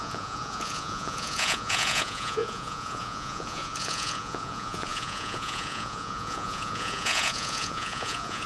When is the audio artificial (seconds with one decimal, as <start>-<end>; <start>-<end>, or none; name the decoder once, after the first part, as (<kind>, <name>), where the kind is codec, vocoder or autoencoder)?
0.0-8.5 (vocoder, Vocos)

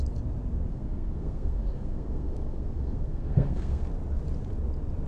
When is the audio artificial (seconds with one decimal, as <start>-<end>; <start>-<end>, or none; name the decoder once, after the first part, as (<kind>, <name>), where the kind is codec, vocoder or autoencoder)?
0.7-3.8 (codec, SNAC)